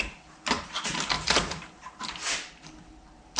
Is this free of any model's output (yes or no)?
yes